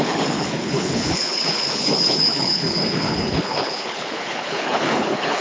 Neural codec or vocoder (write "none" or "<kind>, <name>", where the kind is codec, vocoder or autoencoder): codec, HILCodec